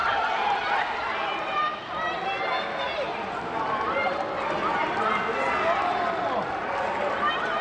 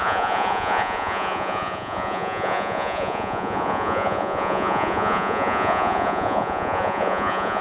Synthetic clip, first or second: second